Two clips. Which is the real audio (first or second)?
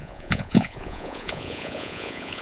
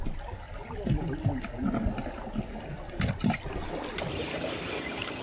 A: second